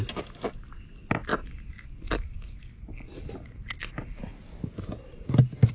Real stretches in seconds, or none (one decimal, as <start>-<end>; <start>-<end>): 0.0-5.7